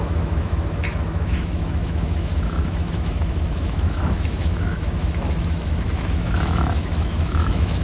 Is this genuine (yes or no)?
no